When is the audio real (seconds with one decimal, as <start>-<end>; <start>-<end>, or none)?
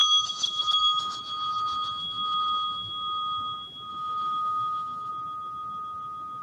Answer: 1.2-3.9; 5.1-6.4